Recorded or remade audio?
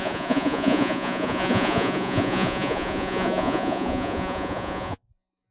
remade